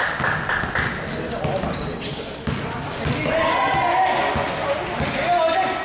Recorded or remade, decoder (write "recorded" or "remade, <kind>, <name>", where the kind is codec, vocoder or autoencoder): recorded